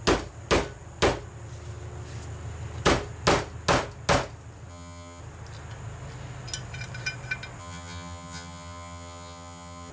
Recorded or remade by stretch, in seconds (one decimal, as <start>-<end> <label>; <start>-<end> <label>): 0.0-4.7 recorded; 4.7-5.2 remade; 5.2-7.6 recorded; 7.6-9.9 remade